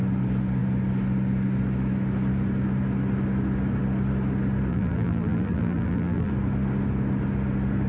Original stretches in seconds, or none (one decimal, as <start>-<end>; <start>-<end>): 0.0-4.7; 6.3-7.9